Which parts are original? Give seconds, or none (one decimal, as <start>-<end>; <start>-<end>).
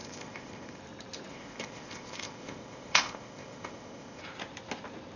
0.8-1.3; 4.2-5.2